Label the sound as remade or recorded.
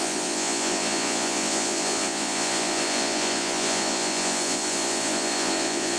remade